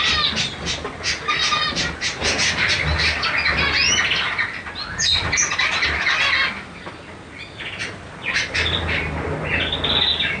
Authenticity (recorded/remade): recorded